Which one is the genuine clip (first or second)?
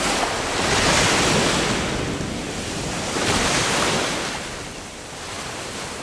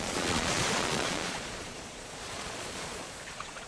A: first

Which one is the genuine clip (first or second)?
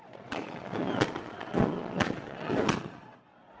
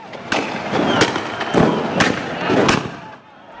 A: second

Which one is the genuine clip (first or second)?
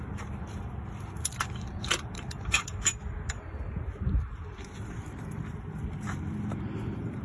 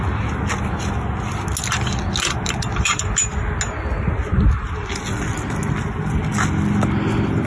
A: second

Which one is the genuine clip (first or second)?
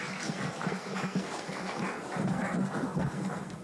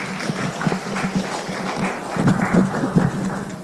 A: second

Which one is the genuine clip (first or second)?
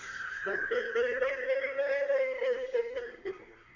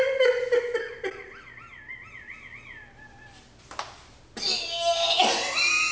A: second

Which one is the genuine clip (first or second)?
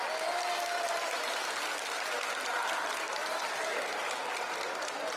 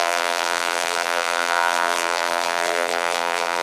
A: first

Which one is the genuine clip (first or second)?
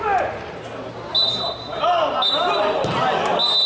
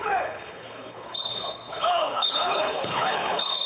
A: first